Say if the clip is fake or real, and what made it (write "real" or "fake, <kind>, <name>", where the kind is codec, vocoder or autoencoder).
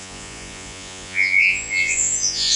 fake, vocoder, Vocos